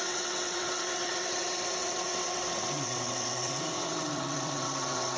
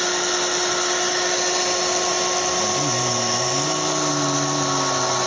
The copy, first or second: first